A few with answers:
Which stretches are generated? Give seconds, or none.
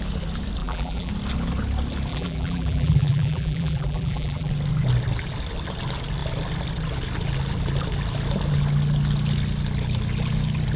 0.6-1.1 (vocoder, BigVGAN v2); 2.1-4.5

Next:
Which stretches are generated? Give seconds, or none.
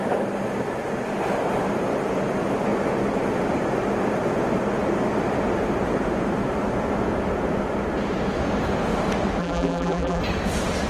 9.4-10.2 (vocoder, BigVGAN v2)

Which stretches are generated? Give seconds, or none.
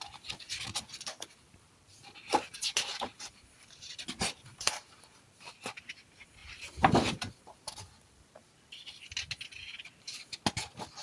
2.6-4.8 (vocoder, BigVGAN v2); 6.4-7.8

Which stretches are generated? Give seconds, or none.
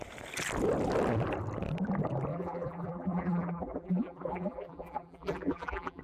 2.3-6.0 (vocoder, BigVGAN v2)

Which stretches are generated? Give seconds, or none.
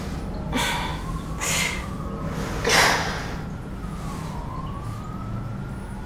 none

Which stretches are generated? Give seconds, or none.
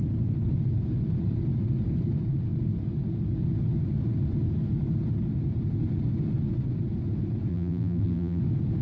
7.5-8.4 (vocoder, BigVGAN v2)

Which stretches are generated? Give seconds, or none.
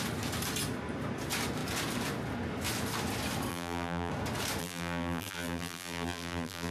3.5-4.1 (vocoder, BigVGAN v2); 4.6-6.7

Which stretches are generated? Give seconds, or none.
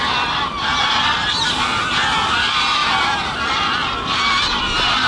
none